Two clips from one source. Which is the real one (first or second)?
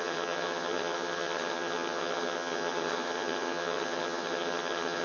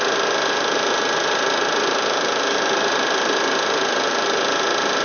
second